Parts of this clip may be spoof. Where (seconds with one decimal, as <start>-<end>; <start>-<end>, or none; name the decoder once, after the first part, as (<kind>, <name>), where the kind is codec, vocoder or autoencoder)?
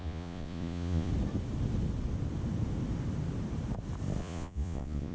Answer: 0.0-1.1 (vocoder, Vocos); 4.2-5.1